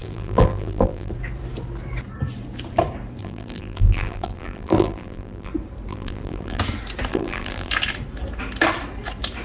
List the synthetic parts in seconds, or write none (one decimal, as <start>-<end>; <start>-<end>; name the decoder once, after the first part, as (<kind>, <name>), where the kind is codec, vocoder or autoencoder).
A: 0.0-1.1 (vocoder, BigVGAN v2); 3.2-5.5; 5.9-6.6; 7.1-7.7